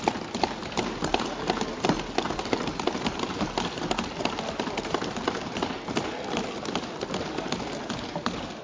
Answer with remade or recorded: recorded